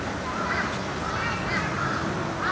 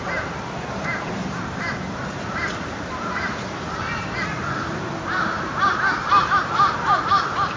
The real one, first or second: first